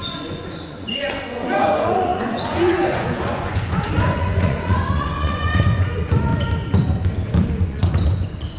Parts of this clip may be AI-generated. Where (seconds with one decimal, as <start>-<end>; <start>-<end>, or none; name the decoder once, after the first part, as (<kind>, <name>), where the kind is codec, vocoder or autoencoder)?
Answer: 0.0-6.3 (vocoder, Vocos); 7.6-8.6